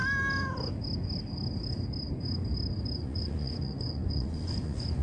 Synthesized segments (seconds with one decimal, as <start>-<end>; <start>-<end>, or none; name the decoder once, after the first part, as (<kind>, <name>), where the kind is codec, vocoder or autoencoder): 3.0-5.0 (vocoder, Vocos)